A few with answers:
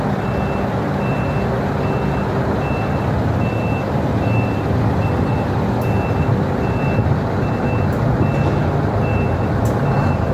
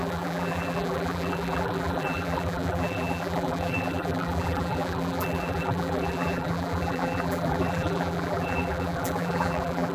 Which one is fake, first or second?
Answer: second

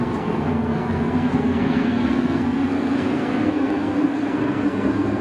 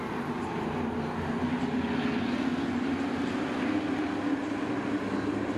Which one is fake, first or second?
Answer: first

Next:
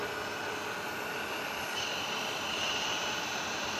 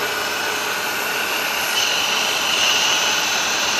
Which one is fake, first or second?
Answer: second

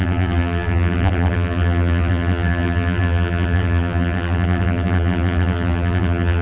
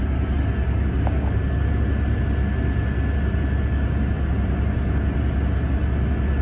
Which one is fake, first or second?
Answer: first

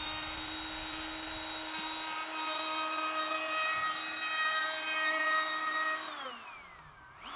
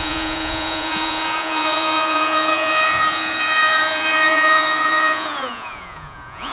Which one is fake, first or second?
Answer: second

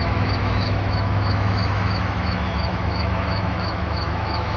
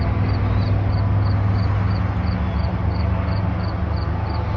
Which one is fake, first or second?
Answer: first